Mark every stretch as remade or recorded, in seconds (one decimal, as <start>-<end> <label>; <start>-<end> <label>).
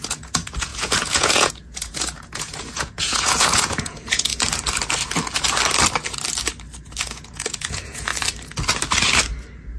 0.0-4.3 remade; 4.3-7.0 recorded; 7.0-8.1 remade; 8.1-9.8 recorded